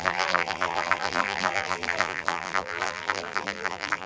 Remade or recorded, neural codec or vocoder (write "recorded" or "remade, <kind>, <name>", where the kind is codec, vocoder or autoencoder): remade, vocoder, BigVGAN v2